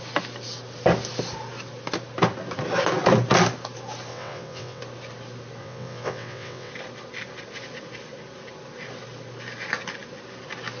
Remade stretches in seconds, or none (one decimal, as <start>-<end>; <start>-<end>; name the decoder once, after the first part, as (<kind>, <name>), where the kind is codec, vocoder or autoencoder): 4.1-4.8 (vocoder, WaveNeXt); 5.6-6.7